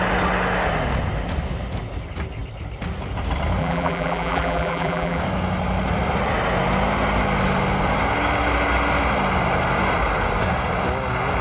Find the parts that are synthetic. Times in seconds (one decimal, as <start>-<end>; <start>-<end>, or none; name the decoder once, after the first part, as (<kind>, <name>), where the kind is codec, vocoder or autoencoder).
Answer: 3.6-5.2 (vocoder, BigVGAN v2)